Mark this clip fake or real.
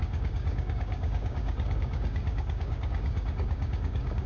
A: fake